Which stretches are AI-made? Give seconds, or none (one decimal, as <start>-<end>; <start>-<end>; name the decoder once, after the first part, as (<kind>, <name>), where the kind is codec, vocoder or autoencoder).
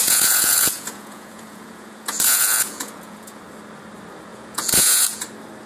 0.0-3.4 (vocoder, Vocos); 4.3-5.2